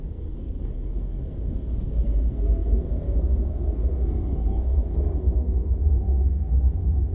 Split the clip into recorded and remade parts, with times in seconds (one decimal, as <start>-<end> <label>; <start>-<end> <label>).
0.0-7.1 remade